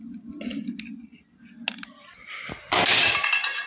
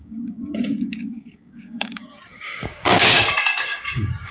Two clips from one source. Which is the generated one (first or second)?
second